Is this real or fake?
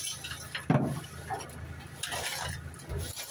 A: real